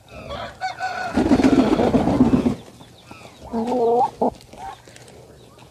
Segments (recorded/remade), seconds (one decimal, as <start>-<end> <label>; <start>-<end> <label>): 0.0-5.7 recorded

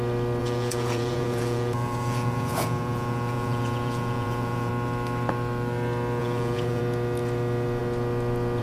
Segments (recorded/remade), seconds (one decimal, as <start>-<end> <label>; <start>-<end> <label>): 0.0-0.4 recorded; 0.4-4.7 remade; 4.7-6.2 recorded; 6.2-6.8 remade; 6.8-8.6 recorded